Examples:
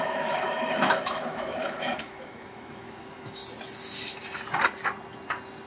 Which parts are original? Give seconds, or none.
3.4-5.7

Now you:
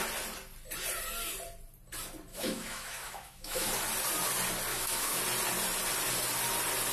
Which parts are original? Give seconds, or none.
0.0-2.3; 3.7-4.7; 5.2-6.9

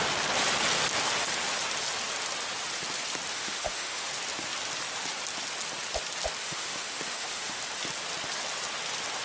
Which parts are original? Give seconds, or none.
0.0-3.3; 4.1-6.4; 7.6-9.2

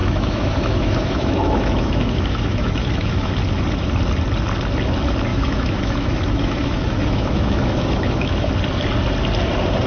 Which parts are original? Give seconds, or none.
3.3-5.3; 8.5-9.9